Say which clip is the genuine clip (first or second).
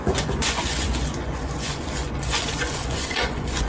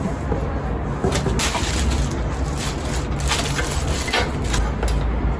second